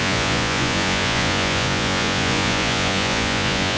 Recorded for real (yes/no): no